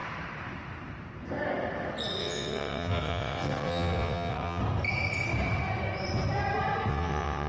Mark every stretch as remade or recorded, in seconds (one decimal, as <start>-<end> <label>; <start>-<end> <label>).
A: 0.0-2.2 recorded; 2.2-4.6 remade; 4.6-6.9 recorded; 6.9-7.5 remade